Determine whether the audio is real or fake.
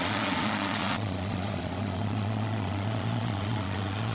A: fake